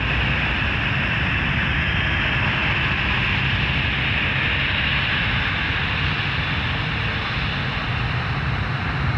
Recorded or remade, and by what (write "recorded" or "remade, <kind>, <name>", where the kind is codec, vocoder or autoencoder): recorded